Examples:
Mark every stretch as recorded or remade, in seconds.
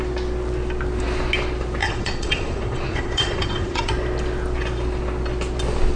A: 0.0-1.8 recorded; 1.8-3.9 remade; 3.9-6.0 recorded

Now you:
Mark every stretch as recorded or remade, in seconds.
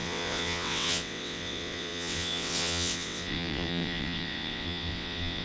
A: 0.0-5.4 remade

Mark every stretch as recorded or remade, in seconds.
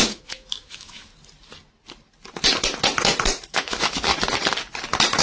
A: 0.0-1.1 remade; 1.1-3.5 recorded; 3.5-4.1 remade; 4.1-5.2 recorded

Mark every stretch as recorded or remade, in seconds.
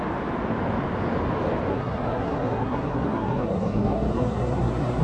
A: 0.0-1.7 recorded; 1.7-5.0 remade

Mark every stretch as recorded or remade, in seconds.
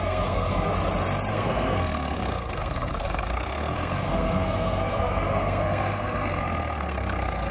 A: 0.0-0.7 remade; 0.7-1.3 recorded; 1.3-7.5 remade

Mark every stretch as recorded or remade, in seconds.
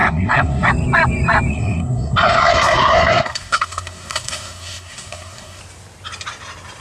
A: 0.0-0.7 remade; 0.7-1.5 recorded; 1.5-5.6 remade; 5.6-6.8 recorded